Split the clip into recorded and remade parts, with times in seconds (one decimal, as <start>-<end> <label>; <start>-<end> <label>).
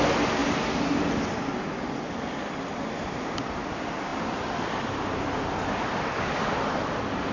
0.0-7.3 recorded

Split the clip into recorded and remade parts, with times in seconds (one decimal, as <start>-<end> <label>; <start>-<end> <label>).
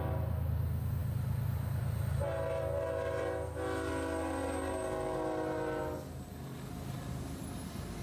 0.0-8.0 recorded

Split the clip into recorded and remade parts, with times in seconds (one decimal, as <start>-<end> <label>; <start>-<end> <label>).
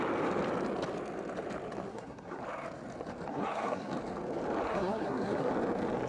0.0-1.9 recorded; 1.9-2.4 remade; 2.4-3.3 recorded; 3.3-3.9 remade; 3.9-4.7 recorded; 4.7-5.5 remade; 5.5-6.1 recorded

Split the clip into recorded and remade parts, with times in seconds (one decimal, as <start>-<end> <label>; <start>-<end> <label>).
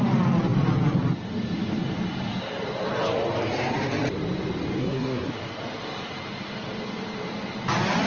0.0-4.8 recorded; 4.8-5.3 remade; 5.3-8.1 recorded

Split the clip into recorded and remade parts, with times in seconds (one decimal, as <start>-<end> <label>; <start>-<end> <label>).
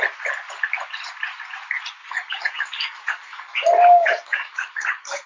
0.0-2.0 recorded; 2.0-5.3 remade